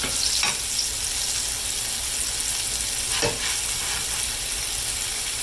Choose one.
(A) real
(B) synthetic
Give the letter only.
A